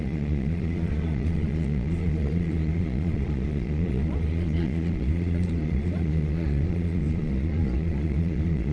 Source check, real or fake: fake